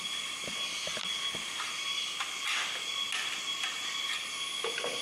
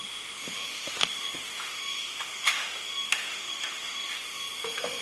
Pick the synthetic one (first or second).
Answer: second